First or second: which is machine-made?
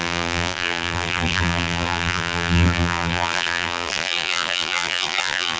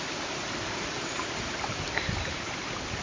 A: first